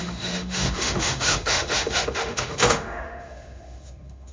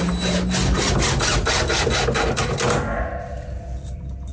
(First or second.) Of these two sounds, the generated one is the first